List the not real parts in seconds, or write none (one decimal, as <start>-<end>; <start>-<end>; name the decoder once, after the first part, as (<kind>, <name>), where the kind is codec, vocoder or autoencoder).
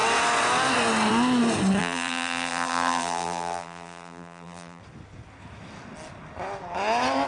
1.8-4.8 (vocoder, BigVGAN v2)